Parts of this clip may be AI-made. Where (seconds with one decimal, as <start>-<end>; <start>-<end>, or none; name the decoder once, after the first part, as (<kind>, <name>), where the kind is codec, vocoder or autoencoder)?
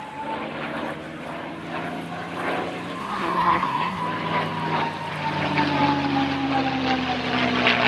3.0-4.0 (codec, SNAC)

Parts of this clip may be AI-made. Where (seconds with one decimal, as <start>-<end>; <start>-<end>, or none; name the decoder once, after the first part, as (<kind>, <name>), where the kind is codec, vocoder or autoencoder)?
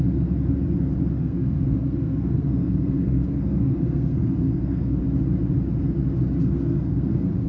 1.2-5.0 (codec, SNAC); 6.4-7.5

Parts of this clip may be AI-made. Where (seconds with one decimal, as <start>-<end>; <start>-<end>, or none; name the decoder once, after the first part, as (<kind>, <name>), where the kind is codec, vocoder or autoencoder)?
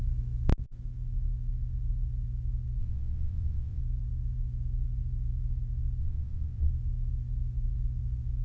2.8-3.8 (vocoder, WaveNeXt); 6.0-6.7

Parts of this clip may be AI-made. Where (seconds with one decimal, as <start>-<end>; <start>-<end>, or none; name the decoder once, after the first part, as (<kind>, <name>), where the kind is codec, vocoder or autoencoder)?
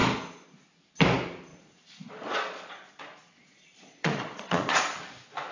1.5-4.8 (vocoder, Vocos)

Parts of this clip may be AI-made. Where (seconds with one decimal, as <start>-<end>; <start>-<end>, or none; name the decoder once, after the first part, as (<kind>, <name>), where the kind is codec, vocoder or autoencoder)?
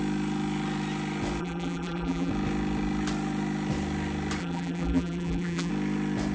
1.4-2.3 (vocoder, BigVGAN v2); 4.4-5.7